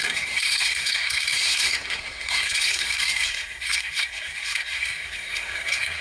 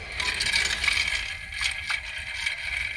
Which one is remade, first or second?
first